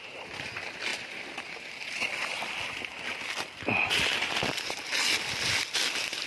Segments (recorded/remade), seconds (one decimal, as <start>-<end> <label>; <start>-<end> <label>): 0.0-6.3 recorded